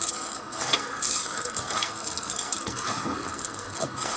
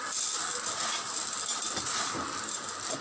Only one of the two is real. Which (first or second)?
second